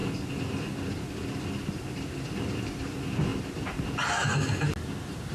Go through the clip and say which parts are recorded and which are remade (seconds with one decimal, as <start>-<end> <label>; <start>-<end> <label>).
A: 0.0-5.3 recorded